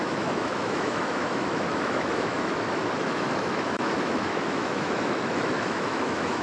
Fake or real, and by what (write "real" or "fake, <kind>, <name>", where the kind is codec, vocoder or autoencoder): fake, autoencoder, DAC-VAE